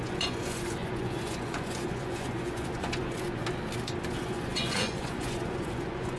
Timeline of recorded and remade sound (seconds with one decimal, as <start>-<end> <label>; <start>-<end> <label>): 0.0-3.4 remade; 3.4-4.1 recorded; 4.1-6.2 remade

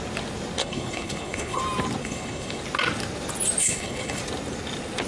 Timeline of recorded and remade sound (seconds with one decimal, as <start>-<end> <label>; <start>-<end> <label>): 0.0-0.6 recorded; 0.6-1.6 remade; 1.6-2.0 recorded; 2.0-2.6 remade; 2.6-3.6 recorded; 3.6-4.2 remade; 4.2-5.1 recorded

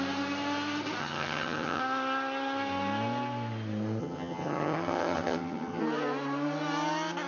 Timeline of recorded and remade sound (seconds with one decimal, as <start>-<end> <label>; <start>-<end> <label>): 0.0-1.0 recorded; 1.0-1.8 remade; 1.8-4.0 recorded; 4.0-5.8 remade; 5.8-7.3 recorded

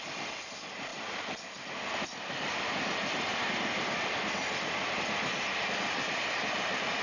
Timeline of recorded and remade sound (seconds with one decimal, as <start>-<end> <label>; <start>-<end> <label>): 0.0-7.0 recorded

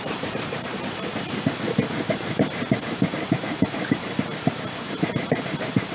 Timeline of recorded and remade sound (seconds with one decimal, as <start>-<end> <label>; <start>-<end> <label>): 0.0-1.1 remade; 1.1-2.8 recorded; 2.8-5.9 remade

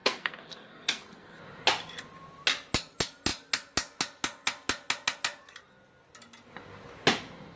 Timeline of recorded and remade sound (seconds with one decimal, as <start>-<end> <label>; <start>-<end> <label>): 0.0-1.4 remade; 1.4-7.6 recorded